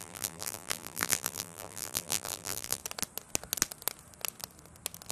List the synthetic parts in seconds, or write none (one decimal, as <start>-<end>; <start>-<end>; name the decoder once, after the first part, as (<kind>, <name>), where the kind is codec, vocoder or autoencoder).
0.0-2.8 (vocoder, BigVGAN v2)